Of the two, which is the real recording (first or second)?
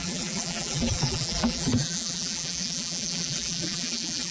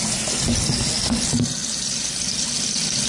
second